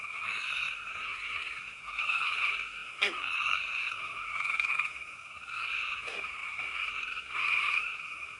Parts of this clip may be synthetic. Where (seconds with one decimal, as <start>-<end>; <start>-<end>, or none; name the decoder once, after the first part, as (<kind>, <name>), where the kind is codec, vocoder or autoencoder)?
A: 0.0-8.4 (codec, SNAC)